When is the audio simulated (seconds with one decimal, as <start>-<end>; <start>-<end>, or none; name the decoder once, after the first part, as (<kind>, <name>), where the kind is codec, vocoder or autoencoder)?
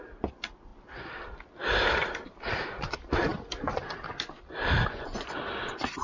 4.8-5.4 (vocoder, Vocos)